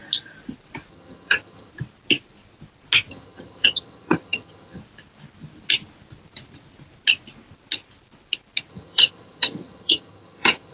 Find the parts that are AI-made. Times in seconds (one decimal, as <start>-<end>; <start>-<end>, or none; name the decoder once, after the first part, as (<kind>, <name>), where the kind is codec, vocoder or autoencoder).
0.9-1.7 (vocoder, HiFi-GAN); 3.1-4.8; 8.7-10.7